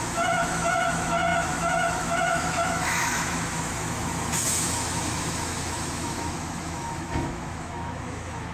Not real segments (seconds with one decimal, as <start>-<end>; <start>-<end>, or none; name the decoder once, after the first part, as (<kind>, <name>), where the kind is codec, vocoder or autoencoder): 0.0-8.5 (autoencoder, DAC-VAE)